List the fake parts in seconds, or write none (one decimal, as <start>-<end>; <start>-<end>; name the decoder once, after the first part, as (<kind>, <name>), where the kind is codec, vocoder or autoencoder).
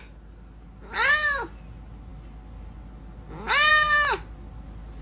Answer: none